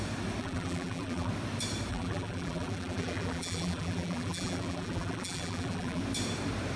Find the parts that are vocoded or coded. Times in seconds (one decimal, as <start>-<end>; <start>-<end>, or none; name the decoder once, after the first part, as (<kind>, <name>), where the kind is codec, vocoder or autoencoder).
0.4-1.3 (vocoder, BigVGAN v2); 1.9-6.0